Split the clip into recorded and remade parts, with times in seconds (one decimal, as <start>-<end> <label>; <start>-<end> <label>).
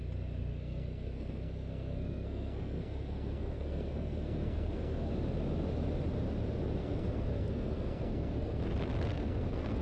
0.0-0.5 recorded; 0.5-5.1 remade; 5.1-6.8 recorded; 6.8-8.6 remade; 8.6-9.1 recorded; 9.1-9.8 remade